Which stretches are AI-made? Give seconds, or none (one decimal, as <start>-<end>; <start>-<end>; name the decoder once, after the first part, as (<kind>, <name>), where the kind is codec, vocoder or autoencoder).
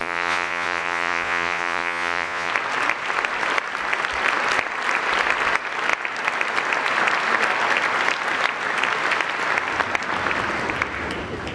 0.0-2.5 (vocoder, Vocos)